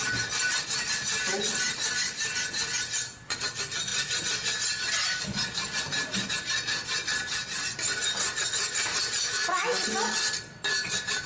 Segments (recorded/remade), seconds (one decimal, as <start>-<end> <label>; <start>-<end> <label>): 0.0-9.2 recorded; 9.2-9.8 remade; 9.8-11.3 recorded